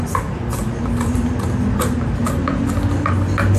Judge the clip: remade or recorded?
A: recorded